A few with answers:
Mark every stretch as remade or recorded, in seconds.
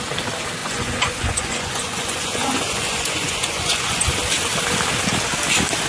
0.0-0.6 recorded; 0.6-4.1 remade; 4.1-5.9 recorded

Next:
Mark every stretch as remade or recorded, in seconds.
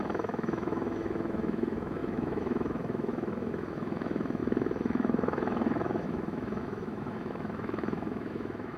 0.0-8.8 remade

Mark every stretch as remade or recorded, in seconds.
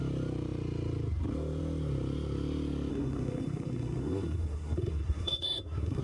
0.0-2.9 recorded; 2.9-6.0 remade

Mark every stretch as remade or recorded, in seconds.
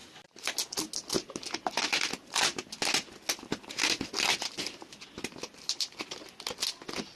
0.0-7.2 recorded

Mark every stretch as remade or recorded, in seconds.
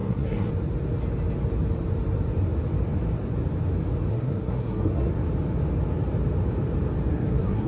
0.0-0.5 remade; 0.5-4.1 recorded; 4.1-5.1 remade; 5.1-7.1 recorded; 7.1-7.7 remade